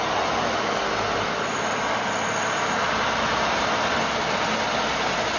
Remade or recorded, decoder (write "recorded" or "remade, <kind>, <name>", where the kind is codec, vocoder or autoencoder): recorded